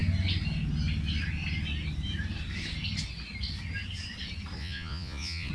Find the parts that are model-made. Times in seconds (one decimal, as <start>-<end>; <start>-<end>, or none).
4.6-5.5